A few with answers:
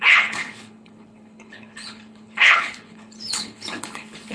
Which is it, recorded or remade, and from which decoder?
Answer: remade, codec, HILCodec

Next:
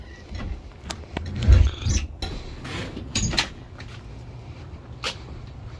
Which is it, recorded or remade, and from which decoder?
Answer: recorded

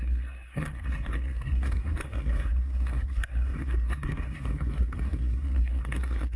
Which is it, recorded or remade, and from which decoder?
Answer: remade, codec, SNAC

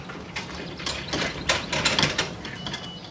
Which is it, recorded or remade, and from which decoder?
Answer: recorded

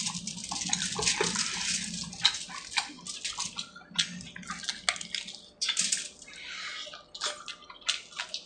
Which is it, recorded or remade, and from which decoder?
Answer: recorded